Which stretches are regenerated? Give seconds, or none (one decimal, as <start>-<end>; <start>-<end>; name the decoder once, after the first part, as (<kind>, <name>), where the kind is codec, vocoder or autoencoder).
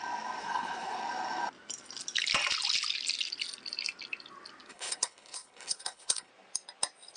0.4-1.0 (codec, HILCodec); 4.7-6.3